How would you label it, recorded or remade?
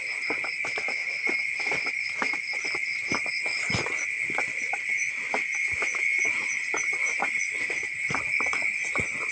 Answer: recorded